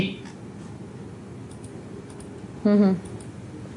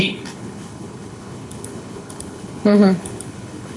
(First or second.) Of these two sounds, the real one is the first